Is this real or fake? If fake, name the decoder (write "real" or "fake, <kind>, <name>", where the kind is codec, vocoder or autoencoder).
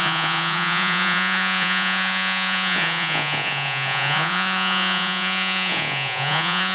fake, vocoder, Vocos